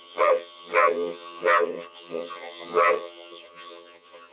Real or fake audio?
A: fake